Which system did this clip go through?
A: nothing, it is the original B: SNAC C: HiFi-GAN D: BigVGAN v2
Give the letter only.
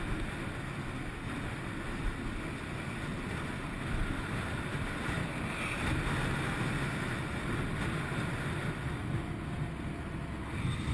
A